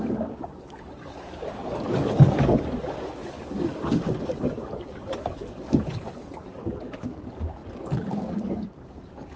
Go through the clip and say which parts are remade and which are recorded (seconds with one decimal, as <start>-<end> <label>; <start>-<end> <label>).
0.0-9.4 remade